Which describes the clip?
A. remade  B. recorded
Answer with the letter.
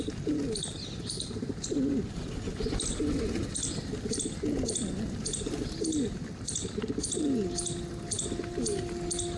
B